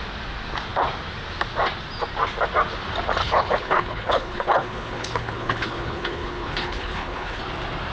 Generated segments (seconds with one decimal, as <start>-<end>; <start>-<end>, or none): 3.2-7.4